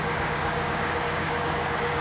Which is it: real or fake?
fake